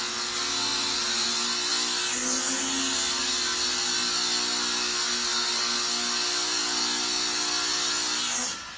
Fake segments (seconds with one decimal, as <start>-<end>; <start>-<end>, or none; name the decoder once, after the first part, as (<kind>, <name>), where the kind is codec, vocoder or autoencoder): none